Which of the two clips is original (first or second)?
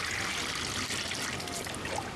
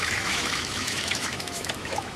first